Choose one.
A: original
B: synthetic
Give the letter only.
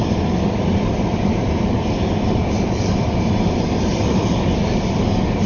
A